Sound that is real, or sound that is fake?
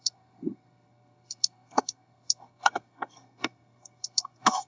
fake